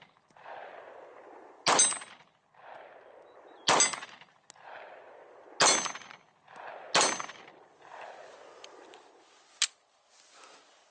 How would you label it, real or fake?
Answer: real